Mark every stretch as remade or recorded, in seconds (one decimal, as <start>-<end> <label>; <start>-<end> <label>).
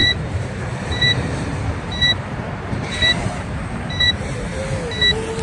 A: 0.0-4.6 remade; 4.6-5.4 recorded